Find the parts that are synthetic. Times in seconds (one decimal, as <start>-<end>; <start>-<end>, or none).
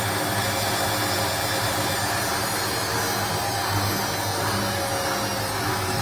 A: none